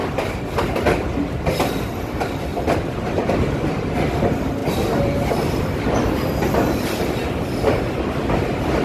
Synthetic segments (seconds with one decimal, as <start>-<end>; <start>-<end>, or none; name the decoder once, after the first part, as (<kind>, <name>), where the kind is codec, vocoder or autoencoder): 0.0-0.6 (vocoder, BigVGAN v2); 2.5-3.9; 4.6-7.8